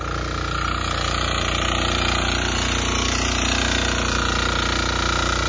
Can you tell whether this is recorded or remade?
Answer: recorded